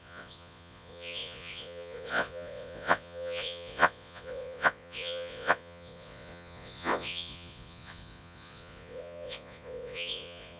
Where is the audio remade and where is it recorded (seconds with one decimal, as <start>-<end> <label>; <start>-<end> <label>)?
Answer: 0.0-10.6 remade